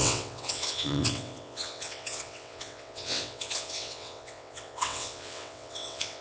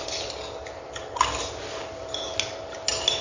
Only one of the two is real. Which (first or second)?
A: second